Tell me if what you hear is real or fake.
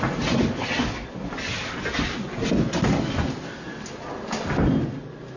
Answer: real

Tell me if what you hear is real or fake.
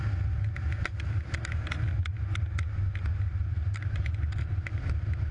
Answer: real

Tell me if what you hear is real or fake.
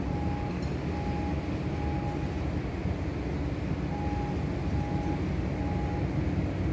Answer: real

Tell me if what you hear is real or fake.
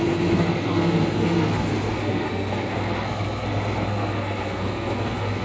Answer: fake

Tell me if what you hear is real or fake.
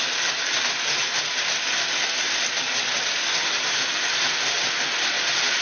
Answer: real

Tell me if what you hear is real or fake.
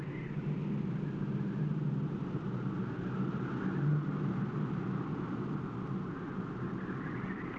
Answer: real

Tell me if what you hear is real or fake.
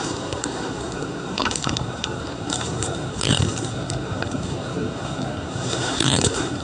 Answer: fake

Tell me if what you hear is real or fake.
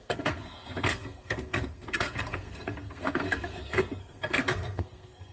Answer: fake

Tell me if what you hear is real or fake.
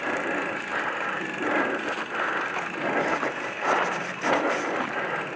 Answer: real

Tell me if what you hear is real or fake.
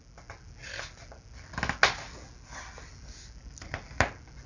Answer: real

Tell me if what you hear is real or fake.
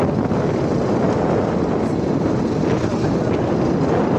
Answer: real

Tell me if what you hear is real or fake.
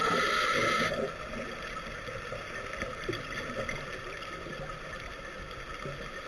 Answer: real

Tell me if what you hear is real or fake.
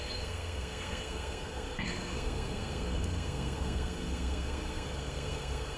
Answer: fake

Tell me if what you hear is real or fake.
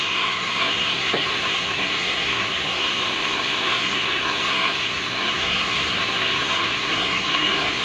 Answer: fake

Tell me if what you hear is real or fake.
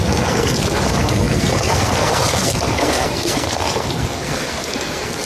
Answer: fake